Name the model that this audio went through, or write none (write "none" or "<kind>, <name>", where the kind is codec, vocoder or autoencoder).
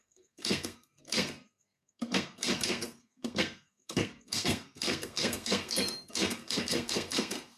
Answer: codec, SNAC